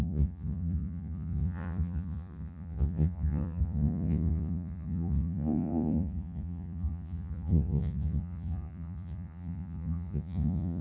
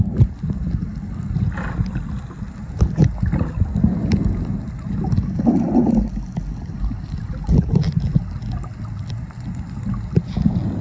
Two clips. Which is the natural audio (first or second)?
second